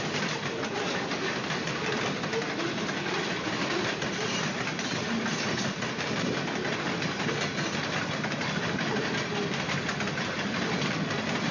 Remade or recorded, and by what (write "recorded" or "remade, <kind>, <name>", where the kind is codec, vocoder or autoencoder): recorded